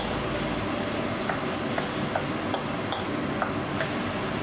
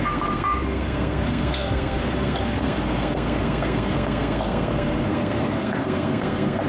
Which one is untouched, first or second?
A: first